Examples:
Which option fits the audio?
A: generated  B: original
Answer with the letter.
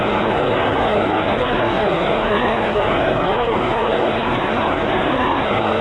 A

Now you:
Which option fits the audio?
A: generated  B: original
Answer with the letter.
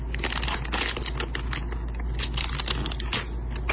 B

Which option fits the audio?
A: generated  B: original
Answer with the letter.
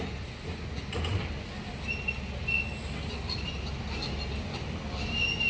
B